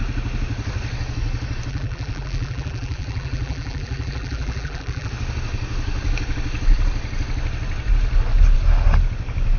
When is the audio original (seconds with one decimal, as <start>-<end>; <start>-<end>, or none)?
0.0-1.7; 5.1-9.6